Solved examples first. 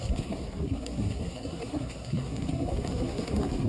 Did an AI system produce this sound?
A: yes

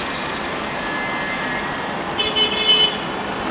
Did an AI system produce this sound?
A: no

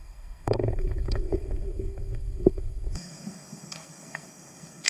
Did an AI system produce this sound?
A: yes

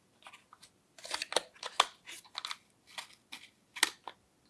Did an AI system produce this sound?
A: no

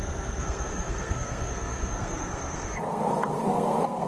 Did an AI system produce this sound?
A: yes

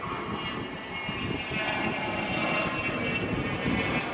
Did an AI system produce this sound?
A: no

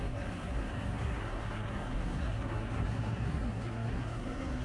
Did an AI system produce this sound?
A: yes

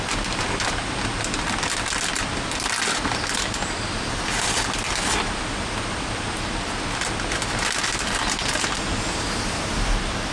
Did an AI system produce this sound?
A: no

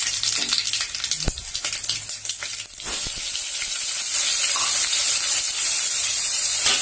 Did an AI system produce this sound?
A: no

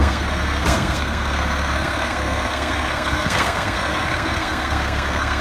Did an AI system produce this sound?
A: yes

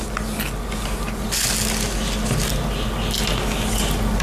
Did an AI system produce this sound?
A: no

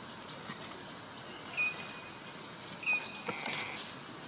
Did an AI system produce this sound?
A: no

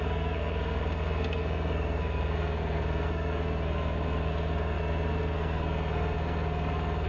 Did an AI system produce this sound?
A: yes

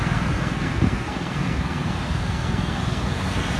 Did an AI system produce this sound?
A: yes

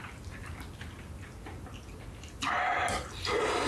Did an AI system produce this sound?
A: no